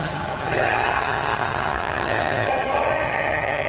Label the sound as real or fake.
fake